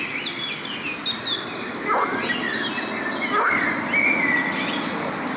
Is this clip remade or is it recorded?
recorded